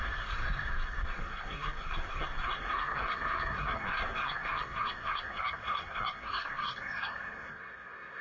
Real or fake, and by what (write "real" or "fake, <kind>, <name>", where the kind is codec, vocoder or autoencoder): fake, codec, SNAC